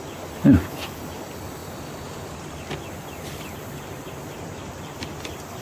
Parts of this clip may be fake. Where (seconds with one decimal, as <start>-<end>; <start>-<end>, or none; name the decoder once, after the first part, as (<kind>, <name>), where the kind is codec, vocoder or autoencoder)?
1.6-5.0 (vocoder, BigVGAN v2)